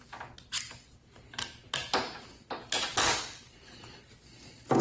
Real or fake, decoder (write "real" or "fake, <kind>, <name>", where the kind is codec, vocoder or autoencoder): real